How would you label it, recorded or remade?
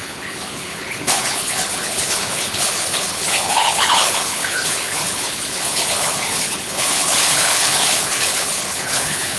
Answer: remade